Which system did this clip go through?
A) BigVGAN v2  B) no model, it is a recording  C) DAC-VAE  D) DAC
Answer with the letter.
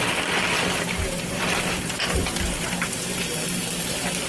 B